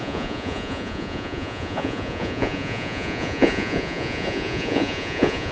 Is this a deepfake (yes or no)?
yes